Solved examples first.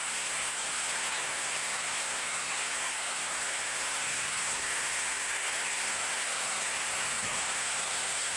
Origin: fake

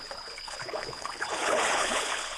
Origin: fake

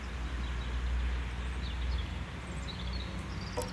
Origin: real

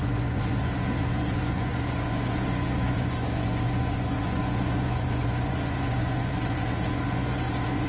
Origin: fake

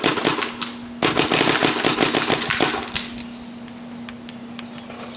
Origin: real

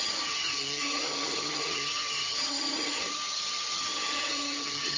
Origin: fake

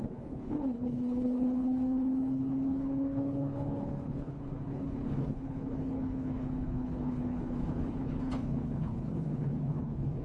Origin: fake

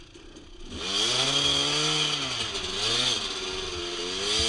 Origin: real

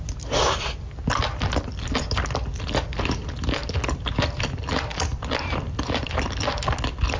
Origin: real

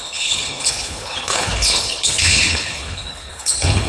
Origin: fake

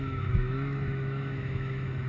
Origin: fake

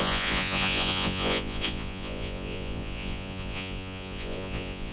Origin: fake